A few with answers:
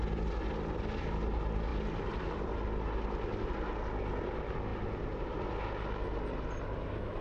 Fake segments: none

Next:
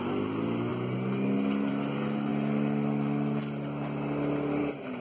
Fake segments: none

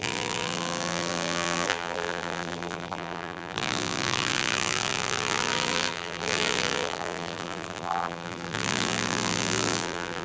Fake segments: 0.0-10.2 (vocoder, BigVGAN v2)

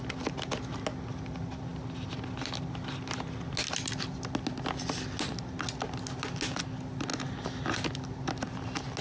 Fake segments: none

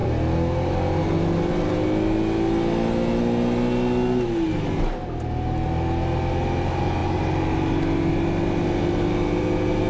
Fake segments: none

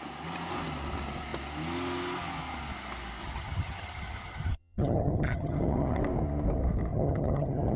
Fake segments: 3.2-6.0 (vocoder, HiFi-GAN); 6.9-7.8

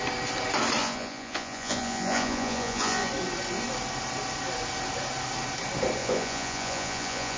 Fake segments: 0.8-3.1 (vocoder, Vocos); 6.0-7.4